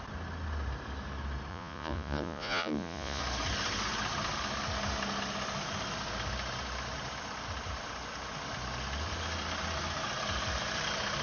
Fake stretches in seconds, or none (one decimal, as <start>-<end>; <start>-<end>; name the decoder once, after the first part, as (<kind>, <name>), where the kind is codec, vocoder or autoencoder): 1.5-3.2 (vocoder, Vocos)